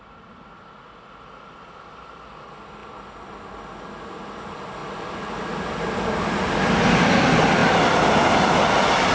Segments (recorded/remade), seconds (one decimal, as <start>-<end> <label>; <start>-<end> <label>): 0.0-9.1 recorded